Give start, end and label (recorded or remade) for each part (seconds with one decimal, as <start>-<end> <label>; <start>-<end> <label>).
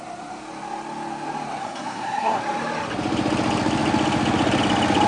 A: 0.0-1.6 recorded; 1.6-2.4 remade; 2.4-5.1 recorded